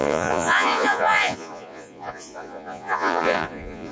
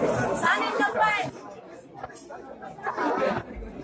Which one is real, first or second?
second